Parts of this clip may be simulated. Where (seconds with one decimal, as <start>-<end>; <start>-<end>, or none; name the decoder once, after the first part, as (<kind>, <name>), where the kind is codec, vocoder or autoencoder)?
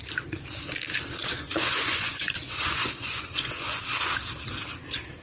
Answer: 1.2-3.8 (vocoder, Vocos)